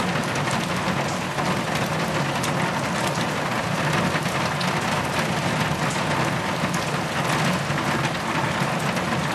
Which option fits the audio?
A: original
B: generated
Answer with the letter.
A